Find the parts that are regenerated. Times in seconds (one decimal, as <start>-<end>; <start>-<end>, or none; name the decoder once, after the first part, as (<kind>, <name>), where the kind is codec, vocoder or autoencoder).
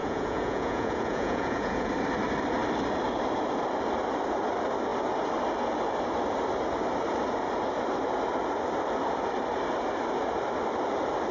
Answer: 0.0-1.9 (vocoder, Vocos)